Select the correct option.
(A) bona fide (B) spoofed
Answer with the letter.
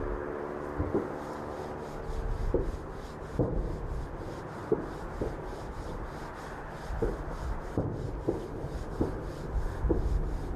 A